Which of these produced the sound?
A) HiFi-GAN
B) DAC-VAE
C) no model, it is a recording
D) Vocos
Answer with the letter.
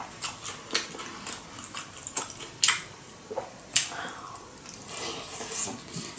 C